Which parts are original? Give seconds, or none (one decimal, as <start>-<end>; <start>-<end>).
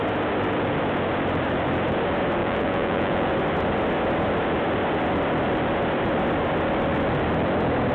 0.0-2.4; 3.3-7.9